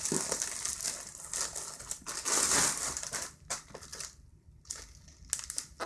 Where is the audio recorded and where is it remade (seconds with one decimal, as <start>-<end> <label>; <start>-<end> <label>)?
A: 0.0-5.9 recorded